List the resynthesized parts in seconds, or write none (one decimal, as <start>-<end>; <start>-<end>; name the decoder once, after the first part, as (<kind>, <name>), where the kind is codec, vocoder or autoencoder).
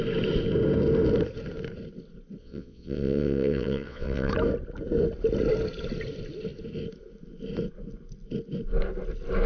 2.4-4.3 (vocoder, WaveNeXt)